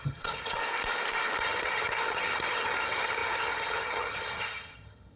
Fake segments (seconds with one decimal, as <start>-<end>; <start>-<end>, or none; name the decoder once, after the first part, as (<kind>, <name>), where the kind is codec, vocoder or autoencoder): 0.0-0.6 (vocoder, HiFi-GAN); 1.4-5.2